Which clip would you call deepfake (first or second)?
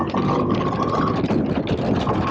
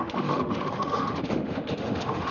second